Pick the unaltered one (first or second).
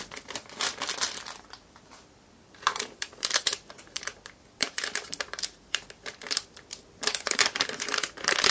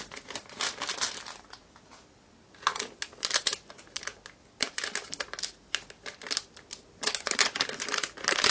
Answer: second